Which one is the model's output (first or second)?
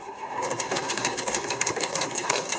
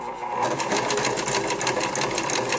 first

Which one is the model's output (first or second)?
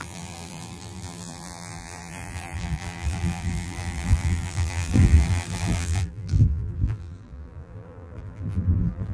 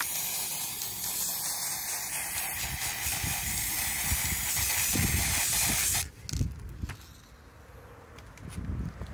first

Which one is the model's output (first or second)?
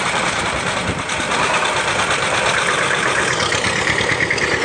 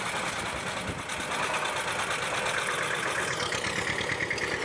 first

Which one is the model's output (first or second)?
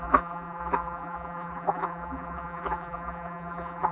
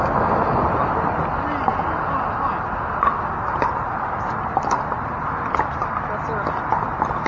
first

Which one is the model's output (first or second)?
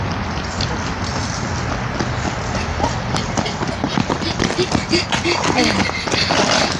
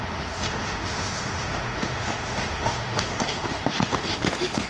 second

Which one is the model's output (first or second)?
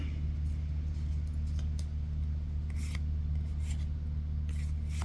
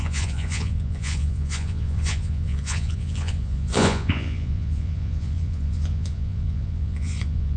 second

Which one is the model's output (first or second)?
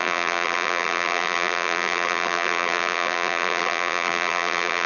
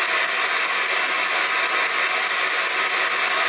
first